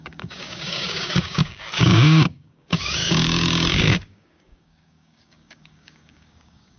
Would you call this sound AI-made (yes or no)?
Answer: yes